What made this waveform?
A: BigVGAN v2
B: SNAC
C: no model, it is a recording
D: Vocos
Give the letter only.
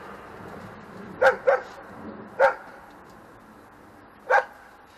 C